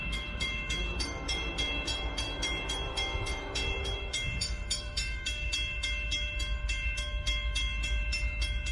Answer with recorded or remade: remade